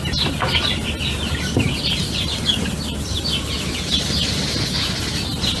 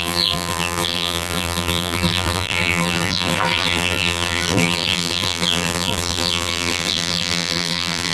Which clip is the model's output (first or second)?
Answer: second